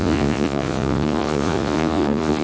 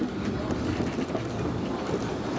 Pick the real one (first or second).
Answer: second